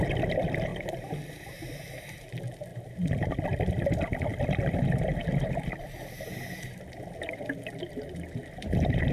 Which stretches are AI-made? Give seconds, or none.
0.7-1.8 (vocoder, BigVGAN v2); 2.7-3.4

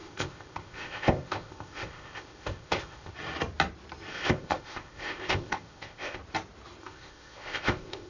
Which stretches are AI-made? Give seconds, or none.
0.0-3.1 (codec, ZipCodec); 4.1-6.2; 6.8-8.1

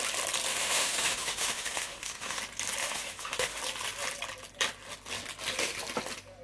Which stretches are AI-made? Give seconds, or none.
0.5-2.4 (autoencoder, DAC-VAE); 2.8-3.6

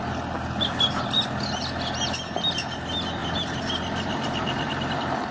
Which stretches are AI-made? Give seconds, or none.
none

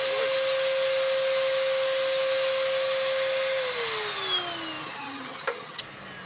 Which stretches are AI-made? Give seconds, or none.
4.8-5.8 (vocoder, HiFi-GAN)

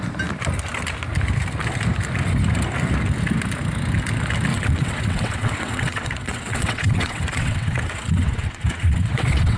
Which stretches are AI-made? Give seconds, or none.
4.5-9.6 (vocoder, WaveNeXt)